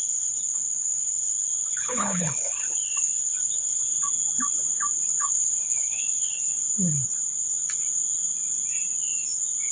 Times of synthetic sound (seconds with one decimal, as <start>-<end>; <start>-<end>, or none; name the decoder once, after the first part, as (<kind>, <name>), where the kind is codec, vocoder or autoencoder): 0.0-3.8 (codec, HILCodec); 5.2-6.5